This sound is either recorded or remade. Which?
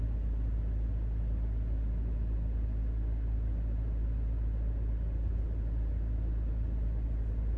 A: recorded